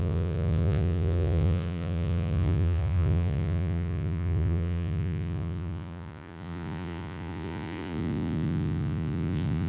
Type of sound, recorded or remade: remade